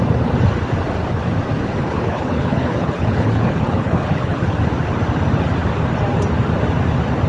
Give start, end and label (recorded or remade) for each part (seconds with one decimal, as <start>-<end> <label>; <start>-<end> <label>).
0.0-1.7 recorded; 1.7-4.6 remade; 4.6-7.3 recorded